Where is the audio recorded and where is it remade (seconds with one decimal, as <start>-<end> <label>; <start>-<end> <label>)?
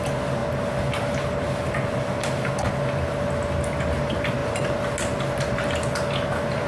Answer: 0.0-6.7 recorded